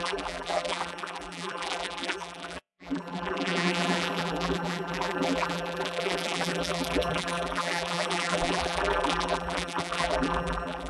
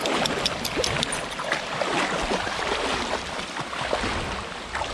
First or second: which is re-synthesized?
first